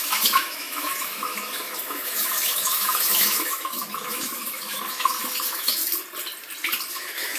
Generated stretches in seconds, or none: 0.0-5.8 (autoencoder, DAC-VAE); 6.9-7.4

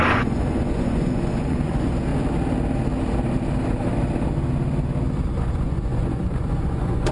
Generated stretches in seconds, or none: 0.0-2.1 (vocoder, Vocos); 5.4-7.1